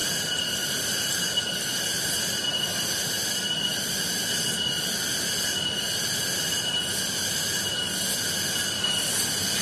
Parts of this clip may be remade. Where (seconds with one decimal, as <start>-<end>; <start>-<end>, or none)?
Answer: none